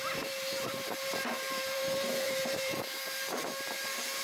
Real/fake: fake